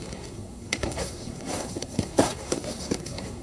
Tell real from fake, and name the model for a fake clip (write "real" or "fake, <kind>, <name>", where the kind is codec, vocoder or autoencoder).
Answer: fake, codec, SNAC